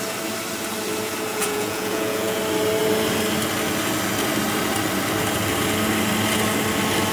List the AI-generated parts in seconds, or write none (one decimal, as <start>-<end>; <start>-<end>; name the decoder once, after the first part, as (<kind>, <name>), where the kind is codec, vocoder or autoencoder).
1.3-2.4 (vocoder, Vocos)